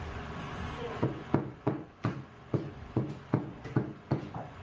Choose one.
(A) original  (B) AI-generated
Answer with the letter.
B